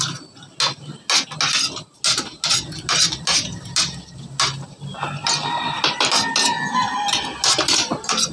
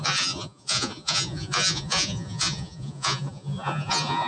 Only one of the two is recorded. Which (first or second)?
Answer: first